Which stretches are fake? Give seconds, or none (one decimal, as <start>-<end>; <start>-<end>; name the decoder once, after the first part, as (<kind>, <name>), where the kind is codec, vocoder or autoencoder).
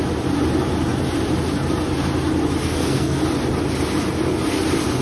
2.6-3.2 (codec, SNAC)